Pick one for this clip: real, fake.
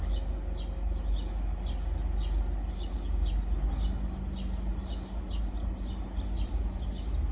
real